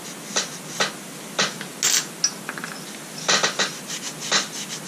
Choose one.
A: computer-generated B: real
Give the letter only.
B